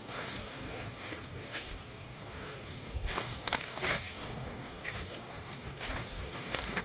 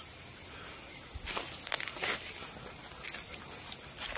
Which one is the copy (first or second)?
first